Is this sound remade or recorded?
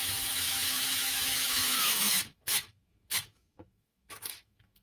remade